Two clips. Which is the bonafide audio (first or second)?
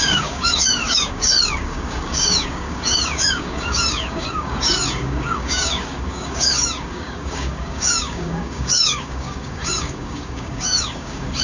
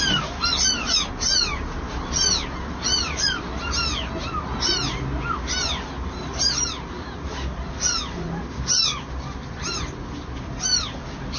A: second